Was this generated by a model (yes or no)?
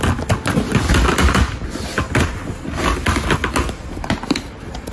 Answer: no